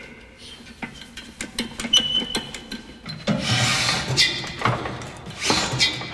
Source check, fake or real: real